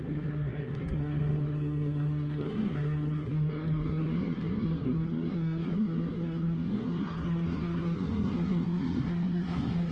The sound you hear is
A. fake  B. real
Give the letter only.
A